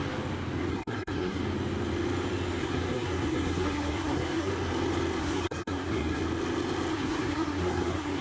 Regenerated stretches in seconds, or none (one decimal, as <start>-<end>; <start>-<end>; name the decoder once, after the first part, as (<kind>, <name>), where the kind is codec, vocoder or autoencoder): 0.7-1.4 (codec, SNAC); 2.6-4.5; 5.2-6.2; 6.9-8.2